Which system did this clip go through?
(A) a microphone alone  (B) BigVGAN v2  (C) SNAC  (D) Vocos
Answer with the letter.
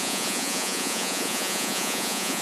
D